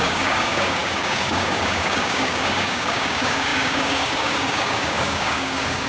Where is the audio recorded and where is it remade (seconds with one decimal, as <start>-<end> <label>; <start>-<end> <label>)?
0.0-5.9 remade